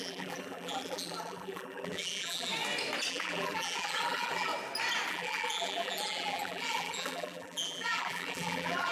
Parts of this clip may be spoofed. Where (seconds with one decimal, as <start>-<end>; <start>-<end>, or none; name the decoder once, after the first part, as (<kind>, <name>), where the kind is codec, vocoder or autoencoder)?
0.0-2.5 (vocoder, BigVGAN v2); 3.1-4.5; 5.1-8.9